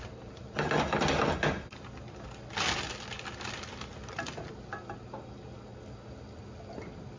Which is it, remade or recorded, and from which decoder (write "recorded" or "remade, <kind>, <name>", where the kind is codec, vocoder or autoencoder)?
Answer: recorded